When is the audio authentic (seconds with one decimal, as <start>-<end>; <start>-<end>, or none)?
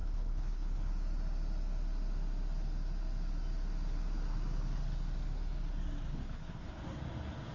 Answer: 0.9-6.1; 6.8-7.5